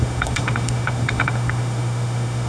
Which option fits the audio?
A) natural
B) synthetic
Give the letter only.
B